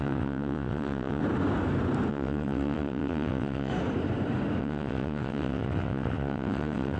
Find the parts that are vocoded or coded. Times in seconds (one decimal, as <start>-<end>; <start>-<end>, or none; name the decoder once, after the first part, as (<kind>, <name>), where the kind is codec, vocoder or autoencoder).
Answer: 0.0-1.2 (vocoder, WaveNeXt); 2.1-3.7; 4.6-7.0